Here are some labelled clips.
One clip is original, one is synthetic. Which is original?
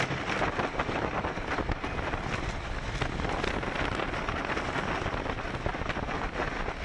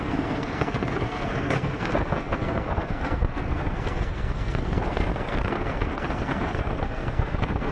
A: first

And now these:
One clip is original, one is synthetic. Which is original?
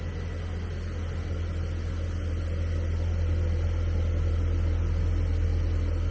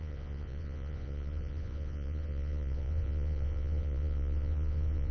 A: first